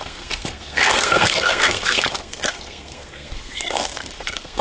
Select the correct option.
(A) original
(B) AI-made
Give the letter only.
B